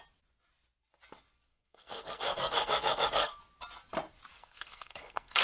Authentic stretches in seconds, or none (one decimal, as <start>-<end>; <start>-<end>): 0.0-1.5; 3.4-4.3